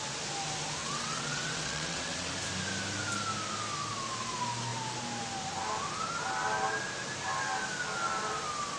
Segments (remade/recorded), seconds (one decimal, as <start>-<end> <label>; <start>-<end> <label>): 0.0-0.8 recorded; 0.8-2.3 remade; 2.3-8.8 recorded